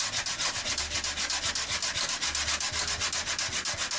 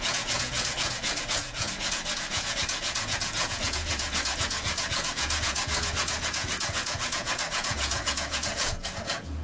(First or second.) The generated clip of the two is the second